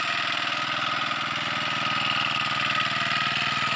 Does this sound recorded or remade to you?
recorded